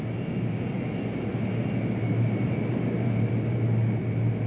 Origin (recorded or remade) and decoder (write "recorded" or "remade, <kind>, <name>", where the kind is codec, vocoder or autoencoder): recorded